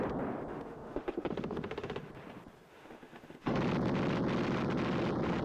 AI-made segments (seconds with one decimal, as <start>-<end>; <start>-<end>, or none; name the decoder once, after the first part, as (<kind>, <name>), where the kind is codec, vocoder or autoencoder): 0.5-2.1 (autoencoder, DAC-VAE); 2.7-3.6